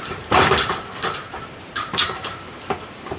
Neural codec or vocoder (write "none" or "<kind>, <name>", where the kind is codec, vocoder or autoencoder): vocoder, BigVGAN v2